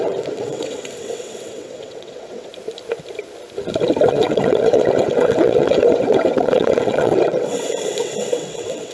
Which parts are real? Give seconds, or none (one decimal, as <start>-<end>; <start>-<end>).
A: 2.5-4.1